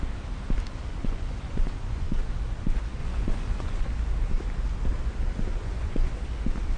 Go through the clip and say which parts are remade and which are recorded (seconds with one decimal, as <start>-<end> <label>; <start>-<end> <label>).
0.0-0.8 recorded; 0.8-2.4 remade; 2.4-3.0 recorded; 3.0-3.8 remade; 3.8-5.5 recorded; 5.5-6.1 remade; 6.1-6.8 recorded